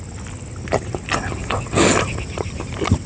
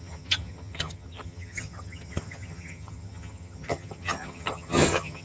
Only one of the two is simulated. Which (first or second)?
second